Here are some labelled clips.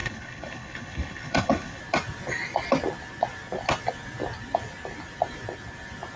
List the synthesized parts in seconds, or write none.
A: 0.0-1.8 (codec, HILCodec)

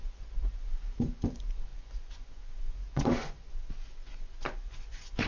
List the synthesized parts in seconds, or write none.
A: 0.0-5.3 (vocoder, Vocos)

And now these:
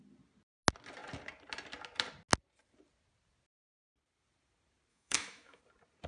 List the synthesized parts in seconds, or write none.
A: 4.9-5.6 (autoencoder, DAC-VAE)